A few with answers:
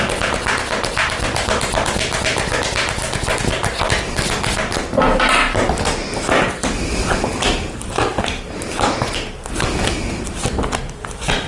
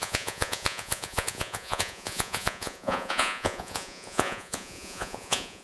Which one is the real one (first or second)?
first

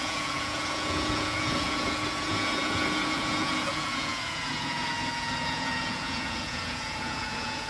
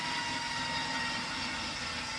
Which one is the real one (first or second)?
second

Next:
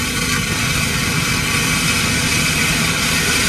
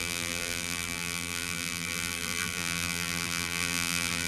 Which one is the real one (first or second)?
first